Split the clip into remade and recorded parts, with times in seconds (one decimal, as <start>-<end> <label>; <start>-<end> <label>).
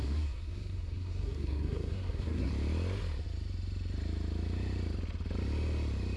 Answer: 0.0-2.5 remade; 2.5-6.2 recorded